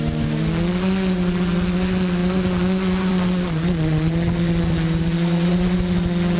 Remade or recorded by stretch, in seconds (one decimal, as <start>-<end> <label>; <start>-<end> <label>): 0.0-6.4 recorded